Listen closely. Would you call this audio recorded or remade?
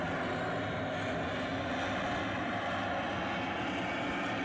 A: recorded